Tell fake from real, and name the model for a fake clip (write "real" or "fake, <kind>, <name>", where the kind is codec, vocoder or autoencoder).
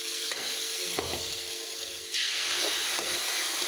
fake, codec, SNAC